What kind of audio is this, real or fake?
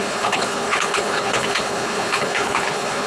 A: fake